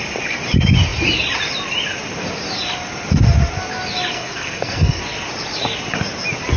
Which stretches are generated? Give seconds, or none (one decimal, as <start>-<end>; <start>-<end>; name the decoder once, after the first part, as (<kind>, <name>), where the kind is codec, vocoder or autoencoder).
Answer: 4.1-5.0 (codec, SNAC)